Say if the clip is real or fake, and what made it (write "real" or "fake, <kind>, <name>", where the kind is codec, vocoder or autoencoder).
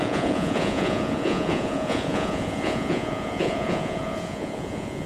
fake, vocoder, Vocos